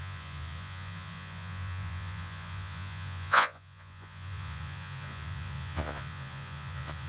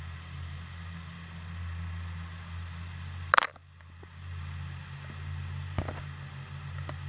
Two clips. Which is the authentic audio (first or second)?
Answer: second